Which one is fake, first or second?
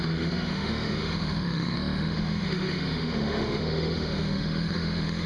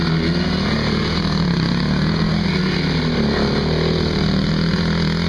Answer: first